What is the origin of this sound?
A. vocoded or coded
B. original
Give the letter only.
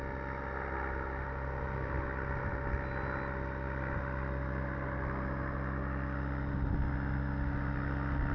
B